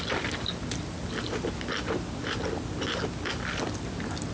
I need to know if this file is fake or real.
real